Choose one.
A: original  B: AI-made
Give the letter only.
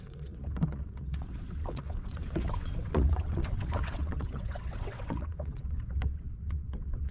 B